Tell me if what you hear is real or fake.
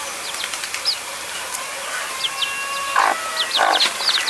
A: real